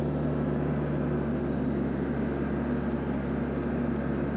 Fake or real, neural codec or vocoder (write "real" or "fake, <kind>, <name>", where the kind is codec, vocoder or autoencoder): real